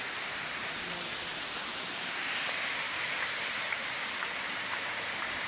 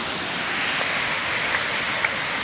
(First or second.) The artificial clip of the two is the first